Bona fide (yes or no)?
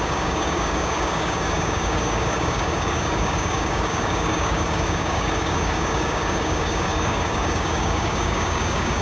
no